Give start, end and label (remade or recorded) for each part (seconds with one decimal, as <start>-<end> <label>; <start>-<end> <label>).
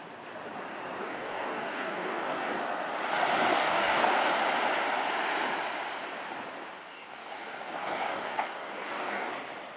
0.0-1.0 recorded; 1.0-2.6 remade; 2.6-3.5 recorded; 3.5-4.1 remade; 4.1-6.9 recorded; 6.9-9.3 remade; 9.3-9.8 recorded